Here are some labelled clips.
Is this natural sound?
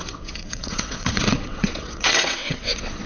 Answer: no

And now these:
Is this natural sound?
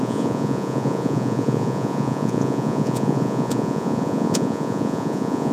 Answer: no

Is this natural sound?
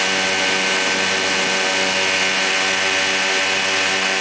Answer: yes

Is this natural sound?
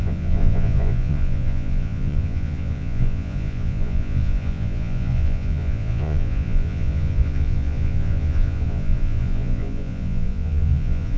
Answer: no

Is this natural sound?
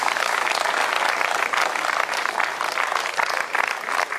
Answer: yes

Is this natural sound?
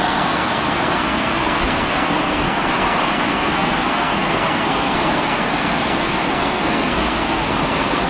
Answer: no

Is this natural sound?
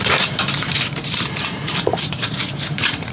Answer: no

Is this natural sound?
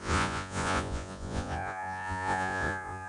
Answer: no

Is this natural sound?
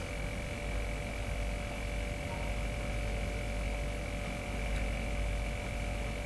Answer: yes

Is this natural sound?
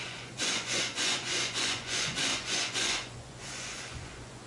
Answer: no